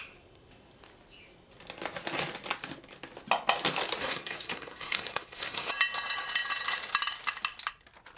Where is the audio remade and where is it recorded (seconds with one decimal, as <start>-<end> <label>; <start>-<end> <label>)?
0.0-4.0 recorded; 4.0-5.7 remade; 5.7-8.2 recorded